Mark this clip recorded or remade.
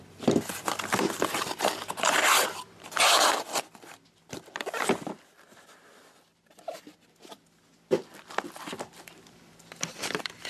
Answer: remade